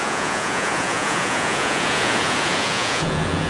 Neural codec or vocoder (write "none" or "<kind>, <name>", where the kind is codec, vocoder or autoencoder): vocoder, Vocos